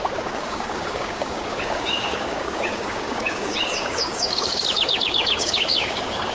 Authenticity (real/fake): fake